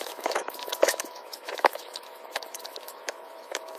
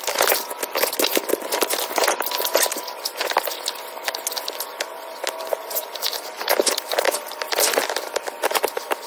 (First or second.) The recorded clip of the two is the second